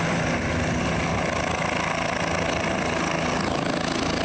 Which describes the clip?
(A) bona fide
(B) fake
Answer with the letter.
A